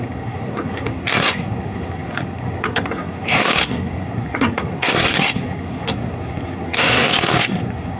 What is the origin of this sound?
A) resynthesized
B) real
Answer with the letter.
A